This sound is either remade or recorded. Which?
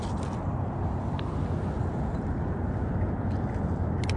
recorded